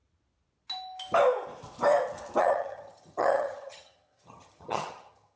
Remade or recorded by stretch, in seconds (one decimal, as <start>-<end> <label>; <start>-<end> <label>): 0.0-2.4 recorded; 2.4-5.4 remade